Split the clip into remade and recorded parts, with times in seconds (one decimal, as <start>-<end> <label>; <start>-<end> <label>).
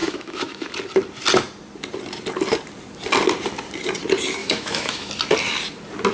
0.0-0.7 remade; 0.7-4.4 recorded; 4.4-5.1 remade; 5.1-6.1 recorded